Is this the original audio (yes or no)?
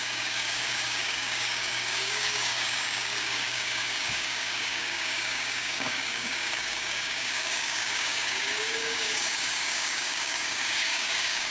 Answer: no